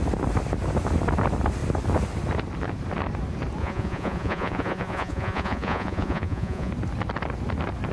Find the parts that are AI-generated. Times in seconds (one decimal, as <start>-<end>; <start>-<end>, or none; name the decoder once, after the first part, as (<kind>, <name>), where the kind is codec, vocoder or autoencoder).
3.6-6.7 (vocoder, Vocos)